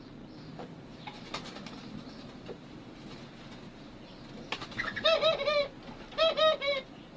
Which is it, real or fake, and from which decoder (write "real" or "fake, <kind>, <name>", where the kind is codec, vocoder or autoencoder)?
real